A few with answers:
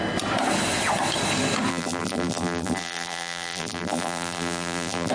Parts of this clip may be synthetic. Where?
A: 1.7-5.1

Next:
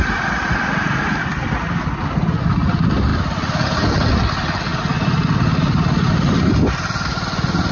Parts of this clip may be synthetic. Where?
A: 3.1-4.3

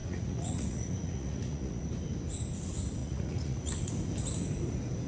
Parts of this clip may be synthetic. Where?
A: 0.0-1.8; 3.0-3.9

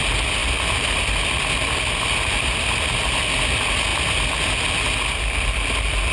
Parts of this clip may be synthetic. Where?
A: 0.4-1.9

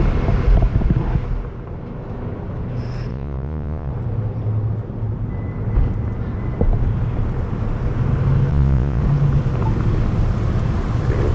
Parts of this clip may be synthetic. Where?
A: 3.1-3.9; 8.5-9.0

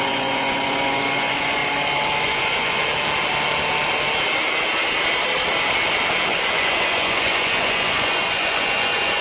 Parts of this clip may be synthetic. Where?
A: 0.0-1.6; 2.2-2.8; 6.3-9.2

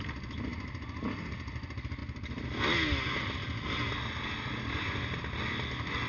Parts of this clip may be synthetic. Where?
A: none